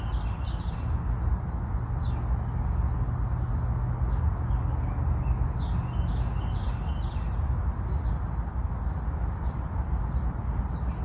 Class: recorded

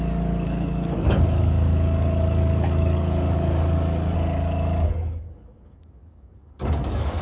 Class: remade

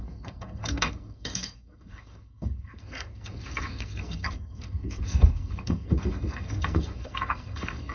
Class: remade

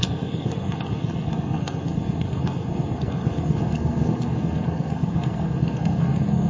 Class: remade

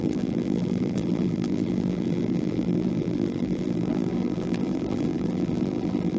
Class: remade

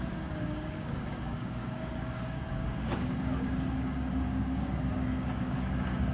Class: remade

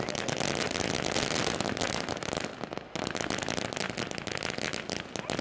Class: recorded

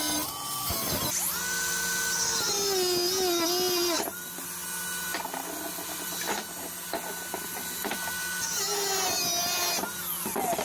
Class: recorded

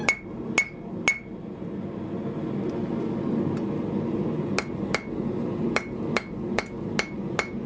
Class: recorded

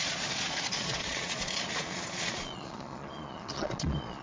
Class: remade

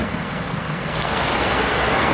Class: remade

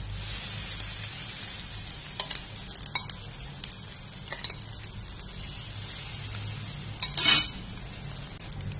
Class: recorded